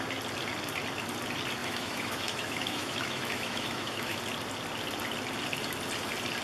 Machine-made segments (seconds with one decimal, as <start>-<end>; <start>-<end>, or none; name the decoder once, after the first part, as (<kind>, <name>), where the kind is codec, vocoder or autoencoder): 1.6-4.2 (autoencoder, DAC-VAE)